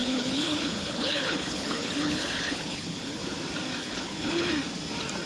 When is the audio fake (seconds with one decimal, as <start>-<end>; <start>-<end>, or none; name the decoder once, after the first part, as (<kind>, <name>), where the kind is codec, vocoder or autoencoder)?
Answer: 0.0-3.2 (codec, HILCodec); 3.8-4.5